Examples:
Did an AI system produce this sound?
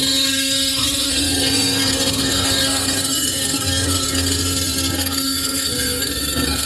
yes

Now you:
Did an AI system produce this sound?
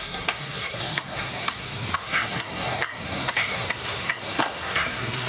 yes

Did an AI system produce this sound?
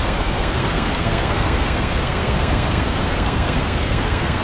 yes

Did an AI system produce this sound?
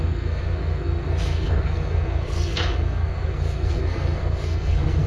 yes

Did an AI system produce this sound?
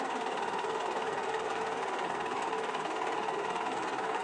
yes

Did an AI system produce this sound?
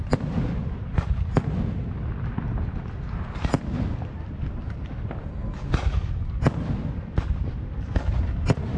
no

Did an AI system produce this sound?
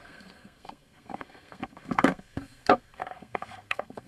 yes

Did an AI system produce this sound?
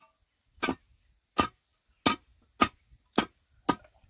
no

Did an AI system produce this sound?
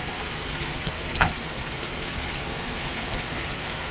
yes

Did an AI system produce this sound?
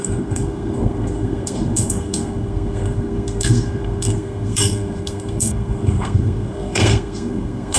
yes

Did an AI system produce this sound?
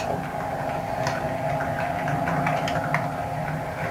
no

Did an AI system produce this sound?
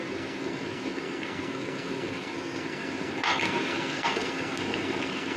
yes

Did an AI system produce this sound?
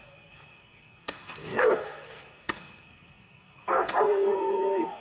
yes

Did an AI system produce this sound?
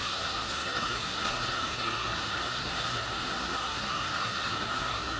yes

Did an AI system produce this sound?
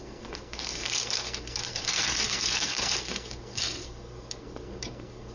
yes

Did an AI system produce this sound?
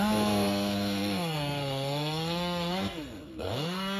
yes